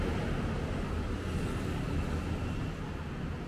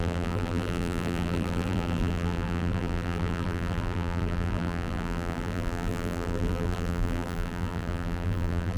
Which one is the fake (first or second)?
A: second